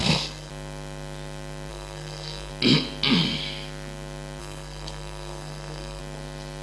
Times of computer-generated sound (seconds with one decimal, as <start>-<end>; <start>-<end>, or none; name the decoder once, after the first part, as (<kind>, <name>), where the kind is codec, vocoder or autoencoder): 0.0-0.5 (codec, SNAC); 1.7-2.5; 4.4-6.0